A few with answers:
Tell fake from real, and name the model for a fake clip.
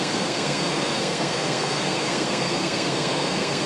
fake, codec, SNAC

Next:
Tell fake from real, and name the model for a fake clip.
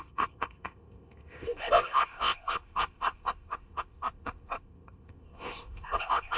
fake, codec, ZipCodec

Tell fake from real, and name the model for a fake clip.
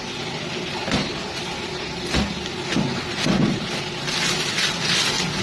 real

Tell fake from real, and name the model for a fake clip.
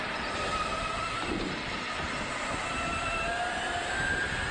real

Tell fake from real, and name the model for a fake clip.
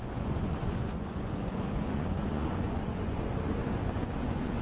fake, vocoder, Vocos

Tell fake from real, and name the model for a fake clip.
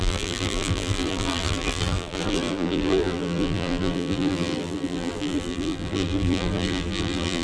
fake, vocoder, BigVGAN v2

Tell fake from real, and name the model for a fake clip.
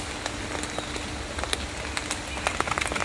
real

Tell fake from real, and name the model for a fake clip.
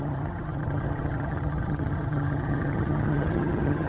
fake, vocoder, HiFi-GAN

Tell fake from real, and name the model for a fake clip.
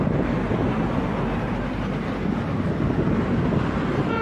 real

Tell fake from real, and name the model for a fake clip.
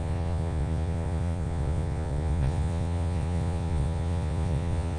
fake, vocoder, Vocos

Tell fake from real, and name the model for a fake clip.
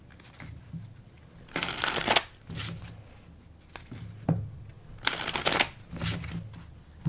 real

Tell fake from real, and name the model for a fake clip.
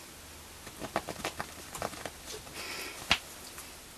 real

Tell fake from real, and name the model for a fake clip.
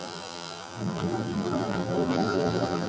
fake, vocoder, BigVGAN v2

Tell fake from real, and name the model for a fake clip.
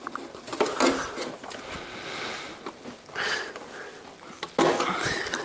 real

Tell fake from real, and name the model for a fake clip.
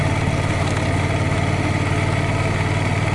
real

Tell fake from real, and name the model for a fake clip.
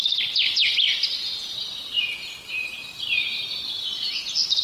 real